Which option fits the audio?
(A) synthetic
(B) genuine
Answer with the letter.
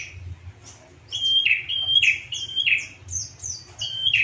B